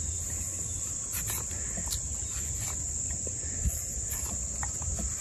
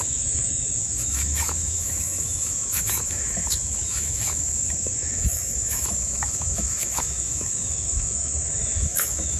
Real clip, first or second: first